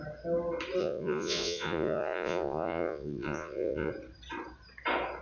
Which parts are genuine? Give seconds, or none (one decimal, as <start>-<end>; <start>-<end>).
0.0-0.8; 3.9-5.2